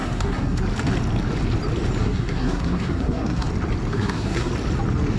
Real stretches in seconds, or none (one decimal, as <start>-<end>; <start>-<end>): 0.6-2.0; 3.5-3.9; 4.5-5.2